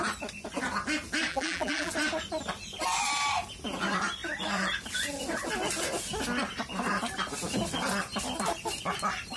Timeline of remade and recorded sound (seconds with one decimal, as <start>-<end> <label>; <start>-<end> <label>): 0.0-1.3 recorded; 1.3-1.9 remade; 1.9-9.4 recorded

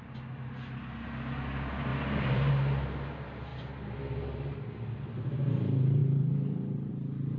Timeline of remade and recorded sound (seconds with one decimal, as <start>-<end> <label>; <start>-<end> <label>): 0.0-1.9 recorded; 1.9-2.5 remade; 2.5-6.0 recorded; 6.0-6.9 remade; 6.9-7.4 recorded

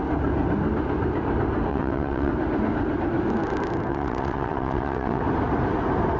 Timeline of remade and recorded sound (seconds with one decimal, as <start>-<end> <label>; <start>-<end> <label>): 0.0-1.7 recorded; 1.7-2.3 remade; 2.3-3.9 recorded; 3.9-5.2 remade; 5.2-6.2 recorded

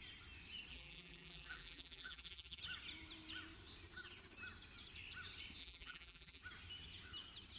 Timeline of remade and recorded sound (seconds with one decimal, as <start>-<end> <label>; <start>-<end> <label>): 0.0-0.7 recorded; 0.7-2.6 remade; 2.6-5.6 recorded; 5.6-6.4 remade; 6.4-7.6 recorded

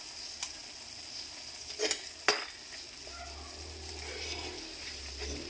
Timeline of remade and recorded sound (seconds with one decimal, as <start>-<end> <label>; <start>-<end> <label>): 0.0-5.5 recorded

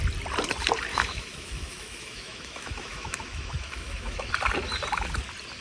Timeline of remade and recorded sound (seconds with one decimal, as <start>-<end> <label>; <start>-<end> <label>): 0.0-0.9 recorded; 0.9-4.3 remade; 4.3-5.6 recorded